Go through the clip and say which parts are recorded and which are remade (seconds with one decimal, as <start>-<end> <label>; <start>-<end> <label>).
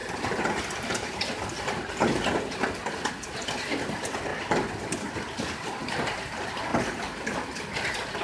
0.0-6.7 recorded; 6.7-7.6 remade; 7.6-8.2 recorded